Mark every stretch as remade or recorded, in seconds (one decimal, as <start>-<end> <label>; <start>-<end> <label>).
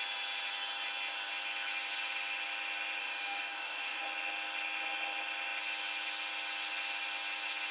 0.0-3.0 recorded; 3.0-4.0 remade; 4.0-7.7 recorded